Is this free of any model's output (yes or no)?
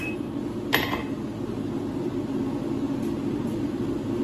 yes